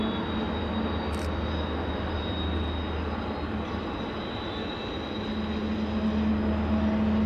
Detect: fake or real real